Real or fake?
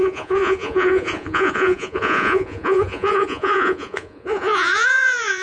fake